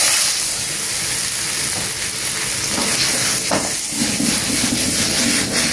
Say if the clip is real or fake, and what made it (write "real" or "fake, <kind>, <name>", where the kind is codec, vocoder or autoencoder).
real